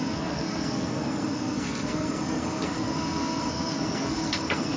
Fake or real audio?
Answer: fake